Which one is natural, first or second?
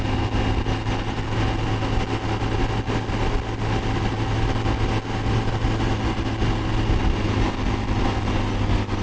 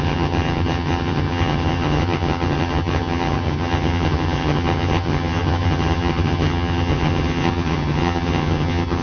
first